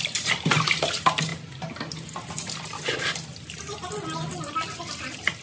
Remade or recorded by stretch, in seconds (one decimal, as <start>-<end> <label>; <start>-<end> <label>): 0.0-5.4 recorded